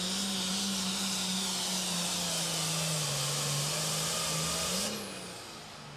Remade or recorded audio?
recorded